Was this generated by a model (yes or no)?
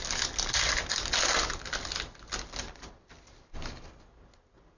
no